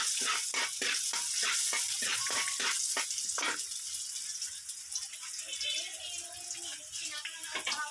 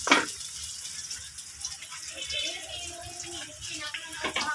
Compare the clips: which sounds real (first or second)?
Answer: first